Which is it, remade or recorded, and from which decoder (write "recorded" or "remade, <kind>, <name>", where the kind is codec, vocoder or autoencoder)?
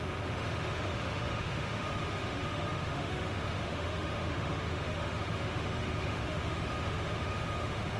remade, autoencoder, DAC-VAE